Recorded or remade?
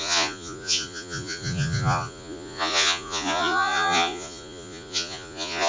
remade